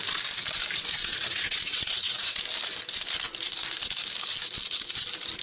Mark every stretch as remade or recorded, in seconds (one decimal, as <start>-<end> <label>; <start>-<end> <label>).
0.0-1.0 recorded; 1.0-2.4 remade; 2.4-5.4 recorded